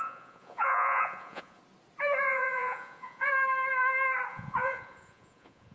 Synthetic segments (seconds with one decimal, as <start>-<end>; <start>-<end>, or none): 0.0-1.6; 2.2-3.3; 4.3-5.7